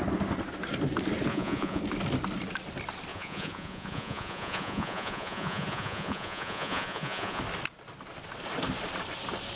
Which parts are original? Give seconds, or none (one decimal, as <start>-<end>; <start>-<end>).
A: 0.0-1.3; 1.8-3.1; 7.4-9.6